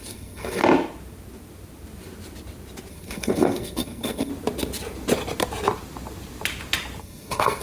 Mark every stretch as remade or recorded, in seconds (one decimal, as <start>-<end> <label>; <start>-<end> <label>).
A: 0.0-0.6 remade; 0.6-2.9 recorded; 2.9-4.3 remade; 4.3-7.0 recorded; 7.0-7.6 remade